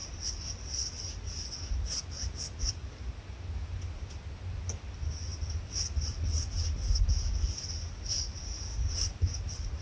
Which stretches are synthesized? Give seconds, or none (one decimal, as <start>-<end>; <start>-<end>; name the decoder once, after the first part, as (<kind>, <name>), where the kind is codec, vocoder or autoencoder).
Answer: none